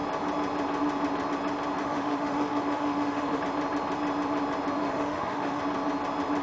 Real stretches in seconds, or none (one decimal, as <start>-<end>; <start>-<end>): 0.0-1.8; 3.4-4.8; 5.6-6.4